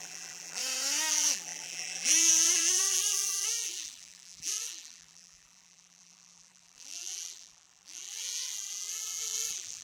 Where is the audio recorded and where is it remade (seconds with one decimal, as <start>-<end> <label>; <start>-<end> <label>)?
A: 0.0-0.6 remade; 0.6-1.1 recorded; 1.1-9.8 remade